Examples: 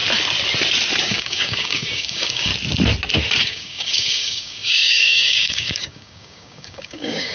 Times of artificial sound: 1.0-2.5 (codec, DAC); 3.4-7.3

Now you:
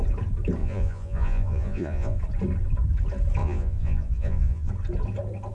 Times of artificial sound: 0.6-2.2 (vocoder, Vocos); 3.4-4.7

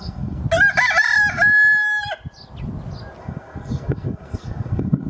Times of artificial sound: 0.0-0.4 (codec, SNAC); 3.2-5.1

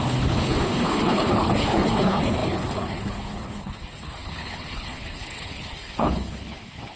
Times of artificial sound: 0.0-7.0 (codec, HILCodec)

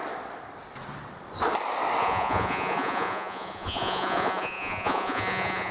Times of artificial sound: 2.0-5.7 (vocoder, Vocos)

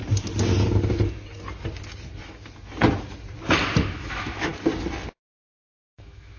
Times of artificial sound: 3.8-4.5 (autoencoder, DAC-VAE); 5.1-6.4

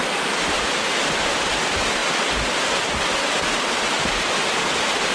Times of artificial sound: none

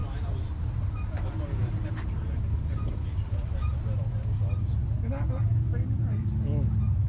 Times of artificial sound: 0.0-0.8 (vocoder, BigVGAN v2); 1.6-2.2